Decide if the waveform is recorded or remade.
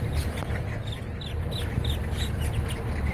recorded